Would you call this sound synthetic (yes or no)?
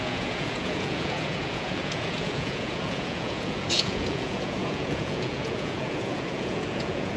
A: yes